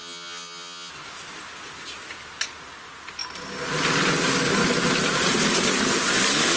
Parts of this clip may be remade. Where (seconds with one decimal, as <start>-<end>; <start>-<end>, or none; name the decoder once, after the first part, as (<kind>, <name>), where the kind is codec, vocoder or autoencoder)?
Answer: 0.0-0.9 (vocoder, HiFi-GAN)

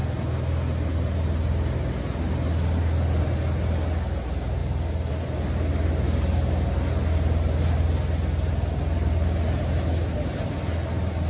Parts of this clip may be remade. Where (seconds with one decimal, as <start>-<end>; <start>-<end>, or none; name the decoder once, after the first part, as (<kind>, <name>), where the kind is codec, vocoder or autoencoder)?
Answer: none

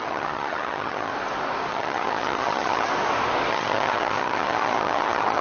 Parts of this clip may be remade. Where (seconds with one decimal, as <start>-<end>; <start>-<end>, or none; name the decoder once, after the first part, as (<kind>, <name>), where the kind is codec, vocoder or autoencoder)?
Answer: 0.0-1.1 (vocoder, HiFi-GAN); 1.7-2.9; 3.5-5.4

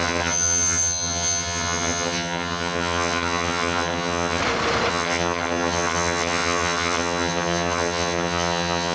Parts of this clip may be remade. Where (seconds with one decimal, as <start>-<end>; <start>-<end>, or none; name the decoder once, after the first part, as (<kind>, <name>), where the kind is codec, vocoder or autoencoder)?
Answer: 0.0-4.4 (vocoder, HiFi-GAN); 4.9-8.9

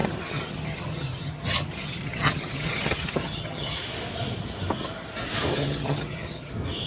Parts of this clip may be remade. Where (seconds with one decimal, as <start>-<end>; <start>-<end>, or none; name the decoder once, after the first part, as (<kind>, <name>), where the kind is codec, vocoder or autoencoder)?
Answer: 0.0-3.8 (vocoder, HiFi-GAN); 5.5-6.5